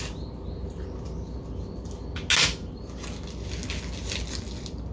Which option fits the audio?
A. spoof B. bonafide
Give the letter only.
B